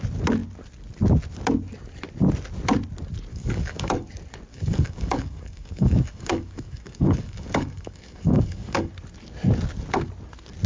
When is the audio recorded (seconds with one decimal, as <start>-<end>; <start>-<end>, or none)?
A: 0.0-3.3; 4.1-4.5; 8.9-10.7